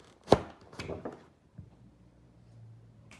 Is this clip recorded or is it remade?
recorded